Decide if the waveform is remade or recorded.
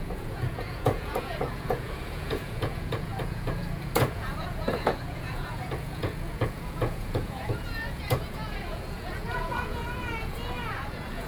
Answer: remade